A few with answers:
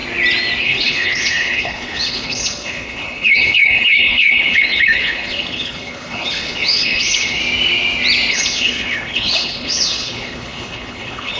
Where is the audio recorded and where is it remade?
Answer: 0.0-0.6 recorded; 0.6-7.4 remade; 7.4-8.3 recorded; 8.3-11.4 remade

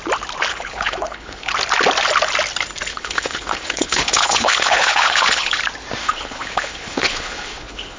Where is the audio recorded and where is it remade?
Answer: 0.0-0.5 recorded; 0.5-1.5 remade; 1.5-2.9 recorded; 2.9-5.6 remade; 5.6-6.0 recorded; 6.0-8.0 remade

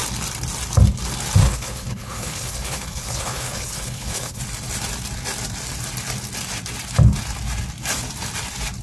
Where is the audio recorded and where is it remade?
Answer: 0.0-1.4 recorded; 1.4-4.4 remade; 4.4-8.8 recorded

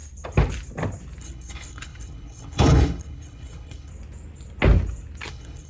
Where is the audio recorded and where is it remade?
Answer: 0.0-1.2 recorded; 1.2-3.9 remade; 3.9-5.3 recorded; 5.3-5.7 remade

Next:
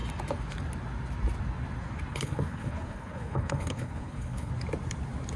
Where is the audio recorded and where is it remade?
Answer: 0.0-2.1 recorded; 2.1-4.5 remade; 4.5-5.4 recorded

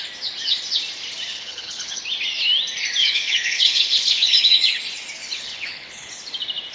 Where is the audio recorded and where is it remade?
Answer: 0.0-1.3 recorded; 1.3-2.0 remade; 2.0-3.0 recorded; 3.0-4.8 remade; 4.8-5.2 recorded; 5.2-6.1 remade; 6.1-6.7 recorded

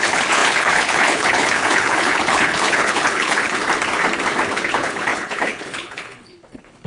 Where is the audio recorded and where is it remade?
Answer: 0.0-3.6 remade; 3.6-4.5 recorded; 4.5-6.9 remade

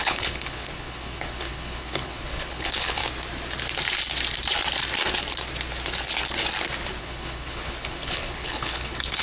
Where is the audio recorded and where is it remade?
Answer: 0.0-3.0 remade; 3.0-7.0 recorded; 7.0-9.2 remade